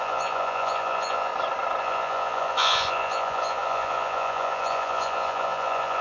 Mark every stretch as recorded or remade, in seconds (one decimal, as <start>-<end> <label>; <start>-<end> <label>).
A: 0.0-1.3 remade; 1.3-1.8 recorded; 1.8-6.0 remade